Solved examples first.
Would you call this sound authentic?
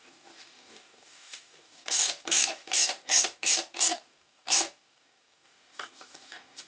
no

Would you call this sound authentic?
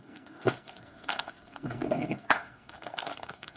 no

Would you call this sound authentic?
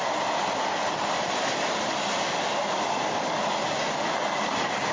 yes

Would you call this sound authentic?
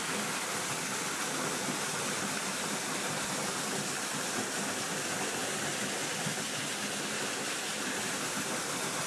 yes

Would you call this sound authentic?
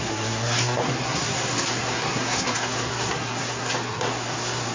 no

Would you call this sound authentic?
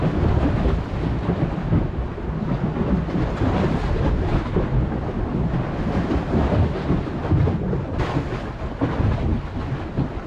yes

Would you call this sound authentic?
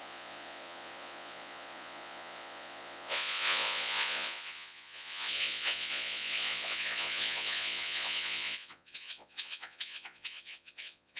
no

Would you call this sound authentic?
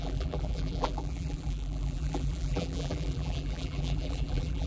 no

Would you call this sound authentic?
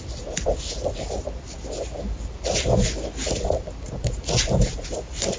yes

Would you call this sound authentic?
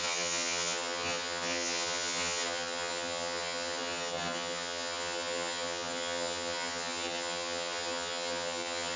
no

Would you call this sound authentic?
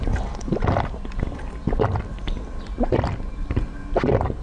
yes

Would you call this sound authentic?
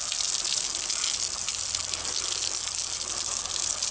yes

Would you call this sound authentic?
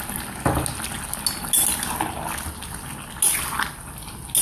yes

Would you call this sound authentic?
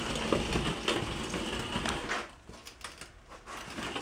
yes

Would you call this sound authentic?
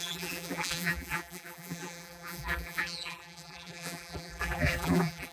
no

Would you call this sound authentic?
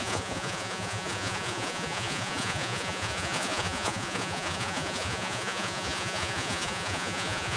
no